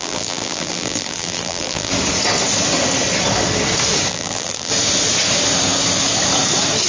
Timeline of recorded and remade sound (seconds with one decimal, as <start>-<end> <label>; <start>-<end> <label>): 0.0-1.9 remade; 1.9-4.1 recorded; 4.1-4.7 remade; 4.7-6.9 recorded